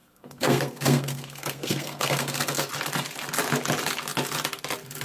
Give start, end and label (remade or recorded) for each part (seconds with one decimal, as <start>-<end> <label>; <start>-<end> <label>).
0.0-2.7 remade; 2.7-5.0 recorded